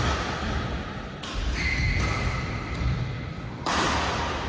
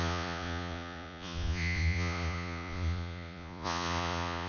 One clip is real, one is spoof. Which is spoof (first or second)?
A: second